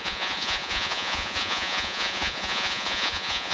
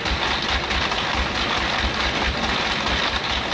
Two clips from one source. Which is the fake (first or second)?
first